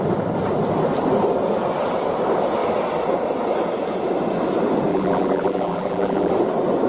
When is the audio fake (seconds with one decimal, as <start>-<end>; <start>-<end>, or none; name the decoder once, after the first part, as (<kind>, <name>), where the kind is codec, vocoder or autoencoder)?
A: 4.9-6.3 (vocoder, BigVGAN v2)